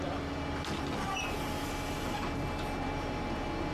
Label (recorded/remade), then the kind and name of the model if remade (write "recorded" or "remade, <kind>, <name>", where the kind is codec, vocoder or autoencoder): recorded